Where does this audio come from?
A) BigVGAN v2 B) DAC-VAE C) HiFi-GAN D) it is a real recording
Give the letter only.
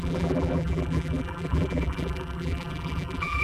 A